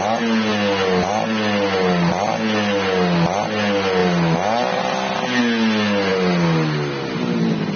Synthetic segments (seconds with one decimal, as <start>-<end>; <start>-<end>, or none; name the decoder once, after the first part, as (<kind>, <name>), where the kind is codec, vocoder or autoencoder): none